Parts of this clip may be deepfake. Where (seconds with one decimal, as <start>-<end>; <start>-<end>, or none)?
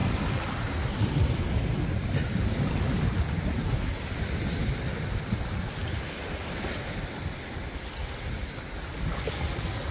none